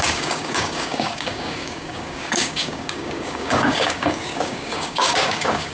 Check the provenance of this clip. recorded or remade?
remade